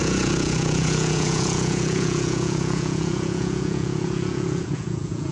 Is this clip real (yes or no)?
no